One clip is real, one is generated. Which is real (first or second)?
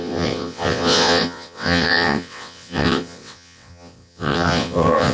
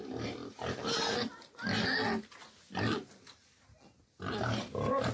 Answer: second